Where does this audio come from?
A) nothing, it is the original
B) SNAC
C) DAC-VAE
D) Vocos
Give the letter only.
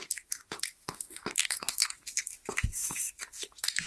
C